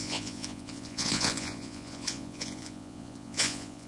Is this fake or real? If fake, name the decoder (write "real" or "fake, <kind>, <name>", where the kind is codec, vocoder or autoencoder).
fake, vocoder, Vocos